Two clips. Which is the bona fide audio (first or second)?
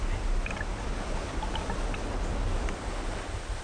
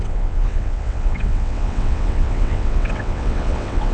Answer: first